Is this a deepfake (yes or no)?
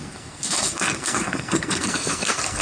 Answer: yes